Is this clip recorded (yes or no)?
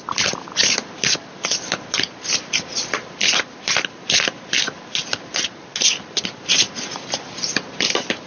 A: yes